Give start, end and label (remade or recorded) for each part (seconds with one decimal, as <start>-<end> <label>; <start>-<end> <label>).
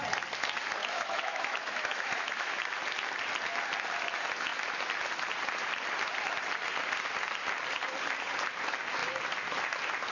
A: 0.0-0.8 recorded; 0.8-2.6 remade; 2.6-10.1 recorded